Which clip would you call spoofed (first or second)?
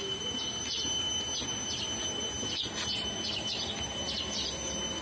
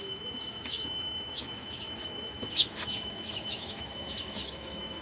second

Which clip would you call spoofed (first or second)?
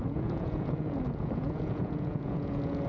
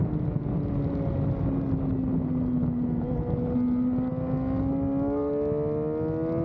first